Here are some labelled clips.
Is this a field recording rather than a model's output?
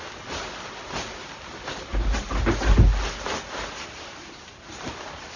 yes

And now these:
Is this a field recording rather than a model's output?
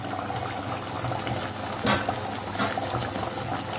yes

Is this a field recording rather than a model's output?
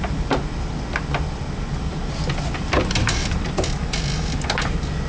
yes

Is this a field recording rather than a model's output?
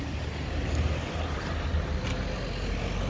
yes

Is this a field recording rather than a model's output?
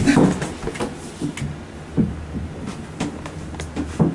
yes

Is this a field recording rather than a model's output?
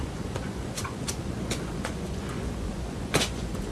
no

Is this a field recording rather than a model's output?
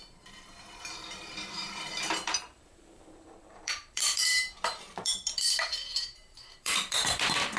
no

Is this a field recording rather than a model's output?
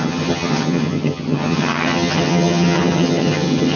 no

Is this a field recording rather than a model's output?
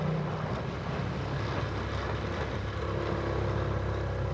yes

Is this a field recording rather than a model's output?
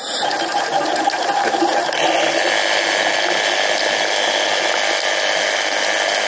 yes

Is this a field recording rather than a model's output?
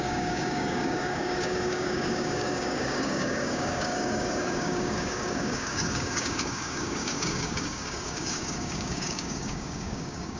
no